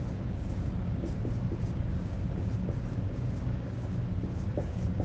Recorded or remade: remade